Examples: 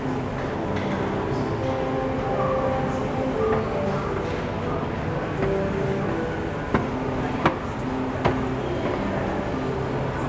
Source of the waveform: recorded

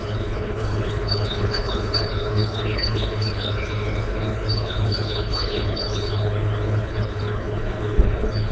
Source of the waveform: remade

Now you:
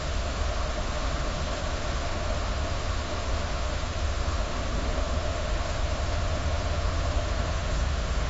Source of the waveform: remade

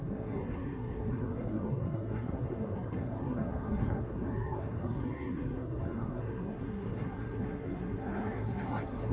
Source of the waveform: remade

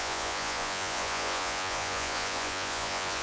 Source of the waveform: remade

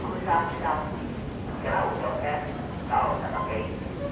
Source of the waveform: recorded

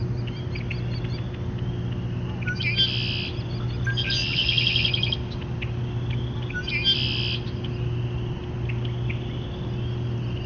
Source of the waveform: recorded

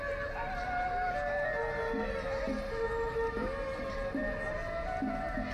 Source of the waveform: recorded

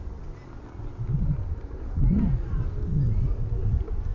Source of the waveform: recorded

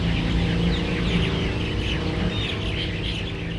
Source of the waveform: recorded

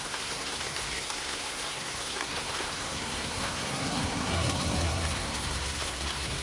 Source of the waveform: remade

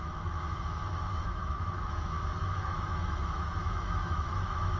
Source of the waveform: remade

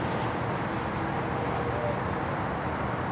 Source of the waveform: recorded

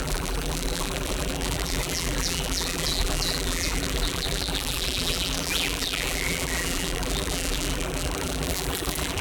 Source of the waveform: remade